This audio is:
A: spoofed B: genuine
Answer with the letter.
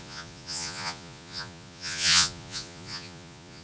A